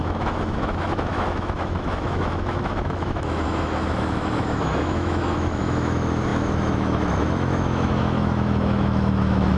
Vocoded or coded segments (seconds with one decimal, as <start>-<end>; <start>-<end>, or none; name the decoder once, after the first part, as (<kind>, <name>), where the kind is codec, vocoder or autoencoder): 0.0-9.6 (autoencoder, DAC-VAE)